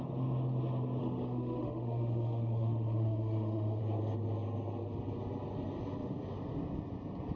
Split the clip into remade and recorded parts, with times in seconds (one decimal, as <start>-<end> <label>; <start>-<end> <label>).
0.0-1.0 recorded; 1.0-3.8 remade; 3.8-7.4 recorded